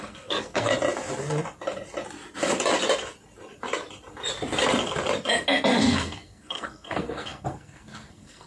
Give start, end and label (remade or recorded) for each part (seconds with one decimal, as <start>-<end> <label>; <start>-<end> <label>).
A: 0.0-0.7 remade; 0.7-5.8 recorded; 5.8-8.5 remade